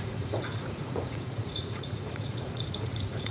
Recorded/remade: remade